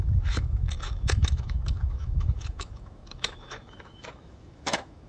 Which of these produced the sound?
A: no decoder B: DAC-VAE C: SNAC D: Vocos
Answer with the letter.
B